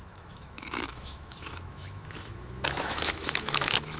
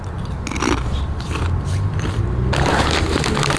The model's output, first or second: first